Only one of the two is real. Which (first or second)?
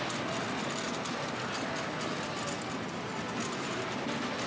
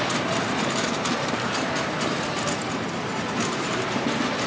first